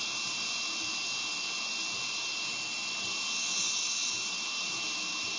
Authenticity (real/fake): real